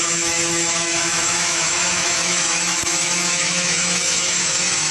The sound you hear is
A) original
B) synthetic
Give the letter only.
B